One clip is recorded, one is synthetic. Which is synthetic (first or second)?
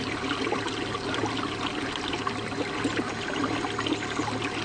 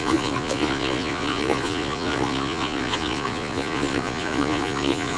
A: second